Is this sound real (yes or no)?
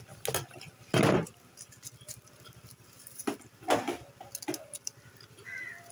yes